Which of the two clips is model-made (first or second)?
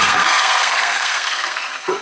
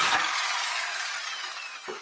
first